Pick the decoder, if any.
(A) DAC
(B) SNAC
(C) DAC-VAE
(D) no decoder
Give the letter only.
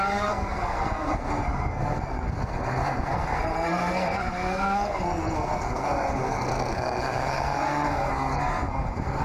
B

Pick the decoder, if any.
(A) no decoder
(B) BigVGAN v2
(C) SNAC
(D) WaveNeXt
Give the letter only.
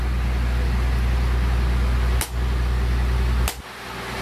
A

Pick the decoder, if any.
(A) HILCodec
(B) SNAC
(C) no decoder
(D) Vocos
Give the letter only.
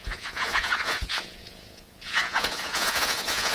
D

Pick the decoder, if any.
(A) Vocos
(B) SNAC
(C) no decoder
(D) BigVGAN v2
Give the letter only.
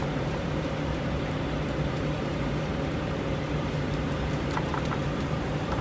D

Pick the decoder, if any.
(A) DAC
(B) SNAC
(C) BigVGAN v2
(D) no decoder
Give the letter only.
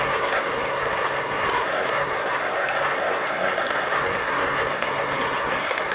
B